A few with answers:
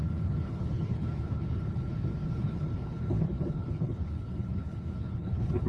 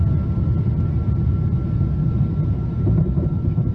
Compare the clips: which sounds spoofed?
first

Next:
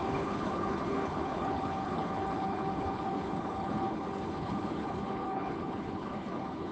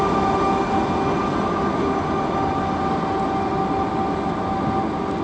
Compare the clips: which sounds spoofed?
first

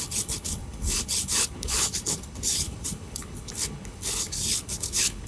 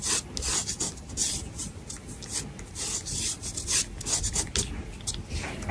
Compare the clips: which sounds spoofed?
first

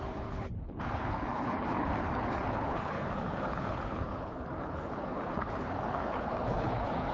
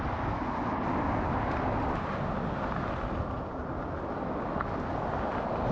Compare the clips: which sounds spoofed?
first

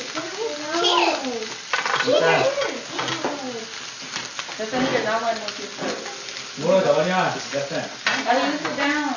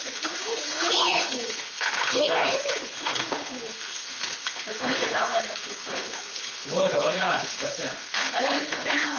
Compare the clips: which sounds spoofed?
second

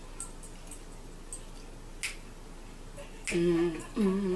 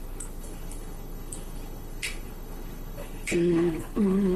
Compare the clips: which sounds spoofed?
second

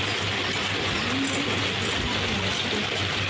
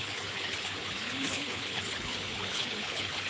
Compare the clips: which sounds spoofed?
second